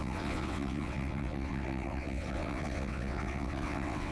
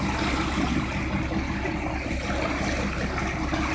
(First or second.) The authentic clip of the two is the second